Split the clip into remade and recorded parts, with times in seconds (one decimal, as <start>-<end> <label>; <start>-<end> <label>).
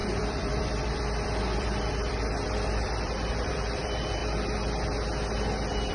0.0-4.2 remade; 4.2-5.9 recorded